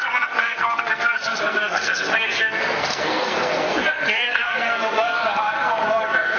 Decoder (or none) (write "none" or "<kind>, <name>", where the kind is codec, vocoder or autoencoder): codec, SNAC